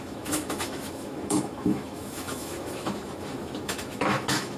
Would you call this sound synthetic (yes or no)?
yes